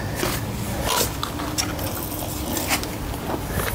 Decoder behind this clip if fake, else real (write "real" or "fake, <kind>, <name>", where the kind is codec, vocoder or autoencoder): real